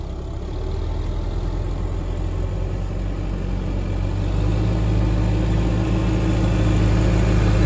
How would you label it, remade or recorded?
recorded